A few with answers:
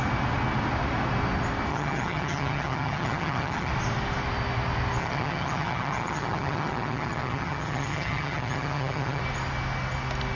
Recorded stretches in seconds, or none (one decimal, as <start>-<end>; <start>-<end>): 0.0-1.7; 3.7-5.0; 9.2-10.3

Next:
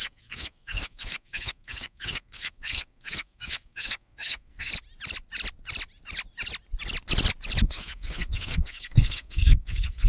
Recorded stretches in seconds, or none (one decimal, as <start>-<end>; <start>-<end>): 4.7-7.6

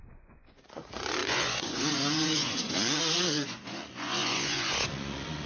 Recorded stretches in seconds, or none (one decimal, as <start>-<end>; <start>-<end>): none